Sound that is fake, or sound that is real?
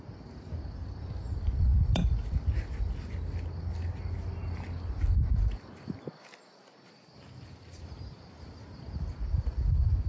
real